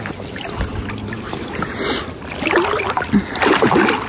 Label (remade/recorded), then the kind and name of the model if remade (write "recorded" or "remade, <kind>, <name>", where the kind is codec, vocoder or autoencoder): recorded